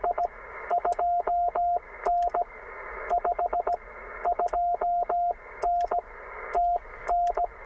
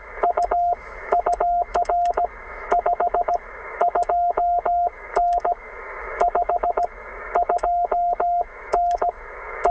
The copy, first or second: second